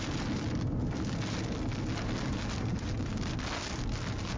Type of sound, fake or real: real